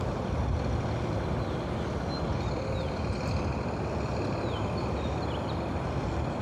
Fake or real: real